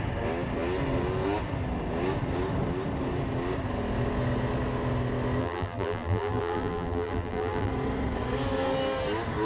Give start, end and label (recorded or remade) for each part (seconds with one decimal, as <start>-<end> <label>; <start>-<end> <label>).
0.0-5.4 recorded; 5.4-7.7 remade; 7.7-9.4 recorded